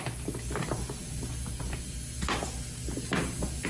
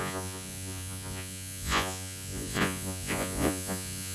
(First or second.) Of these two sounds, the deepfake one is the second